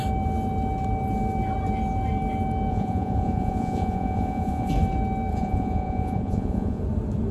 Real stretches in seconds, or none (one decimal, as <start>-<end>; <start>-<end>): 0.0-2.7; 4.7-5.3; 6.8-7.3